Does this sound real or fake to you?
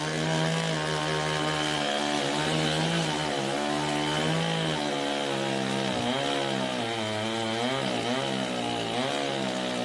real